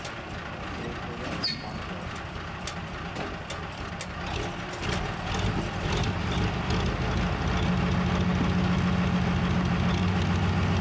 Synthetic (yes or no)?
no